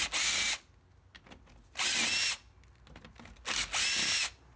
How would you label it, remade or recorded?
recorded